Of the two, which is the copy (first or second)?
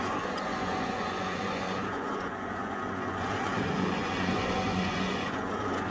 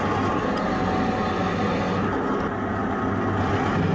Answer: first